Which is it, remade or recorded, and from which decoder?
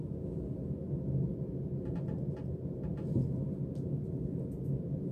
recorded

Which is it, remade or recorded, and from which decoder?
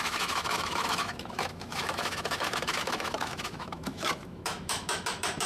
remade, autoencoder, DAC-VAE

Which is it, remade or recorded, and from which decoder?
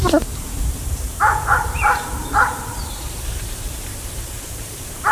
remade, vocoder, BigVGAN v2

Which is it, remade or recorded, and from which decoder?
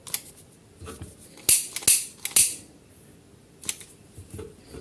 recorded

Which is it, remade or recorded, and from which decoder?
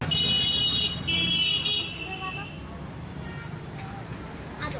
recorded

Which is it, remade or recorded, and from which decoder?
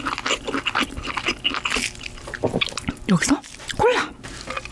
recorded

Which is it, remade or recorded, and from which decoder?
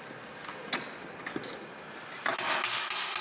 recorded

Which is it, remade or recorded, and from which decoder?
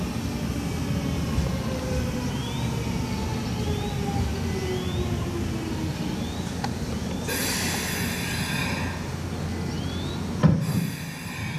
recorded